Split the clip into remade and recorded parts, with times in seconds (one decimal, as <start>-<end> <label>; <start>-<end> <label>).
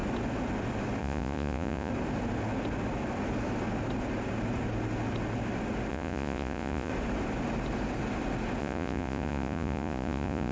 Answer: 0.0-1.0 recorded; 1.0-1.9 remade; 1.9-5.9 recorded; 5.9-6.9 remade; 6.9-8.6 recorded; 8.6-10.5 remade